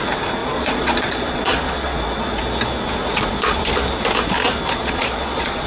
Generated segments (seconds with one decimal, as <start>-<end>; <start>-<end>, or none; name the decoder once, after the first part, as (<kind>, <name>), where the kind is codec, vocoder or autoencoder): 0.4-2.4 (vocoder, Vocos); 3.0-3.6; 4.8-5.7